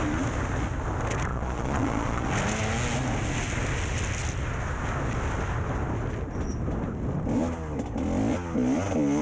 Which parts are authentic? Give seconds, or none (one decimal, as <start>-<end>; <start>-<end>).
0.0-1.3; 2.3-9.2